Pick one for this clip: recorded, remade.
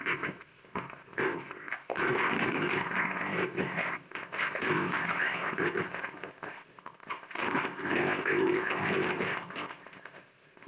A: remade